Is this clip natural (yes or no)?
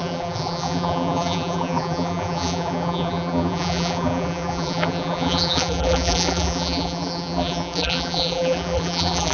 no